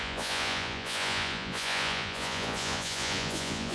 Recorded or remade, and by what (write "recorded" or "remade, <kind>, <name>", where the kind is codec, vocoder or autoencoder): remade, vocoder, Vocos